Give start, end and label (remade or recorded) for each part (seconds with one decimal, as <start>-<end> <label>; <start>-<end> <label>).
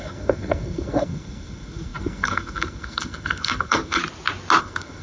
0.0-4.0 remade; 4.0-4.6 recorded; 4.6-5.0 remade